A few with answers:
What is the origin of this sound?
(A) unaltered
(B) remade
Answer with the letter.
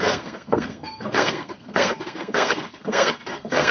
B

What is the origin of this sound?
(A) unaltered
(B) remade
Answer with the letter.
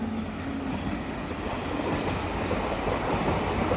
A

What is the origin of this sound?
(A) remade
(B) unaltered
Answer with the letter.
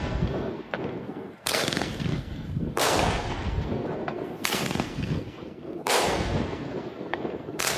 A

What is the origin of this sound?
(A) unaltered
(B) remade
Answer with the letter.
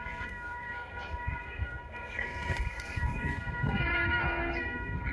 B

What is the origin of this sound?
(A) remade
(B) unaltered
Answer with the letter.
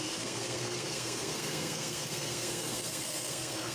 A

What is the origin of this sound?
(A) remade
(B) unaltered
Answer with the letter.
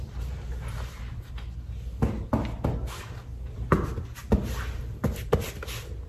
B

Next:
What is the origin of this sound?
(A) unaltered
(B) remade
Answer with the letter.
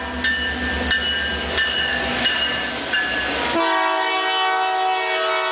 A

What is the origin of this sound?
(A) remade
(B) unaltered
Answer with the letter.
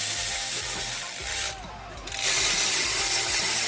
B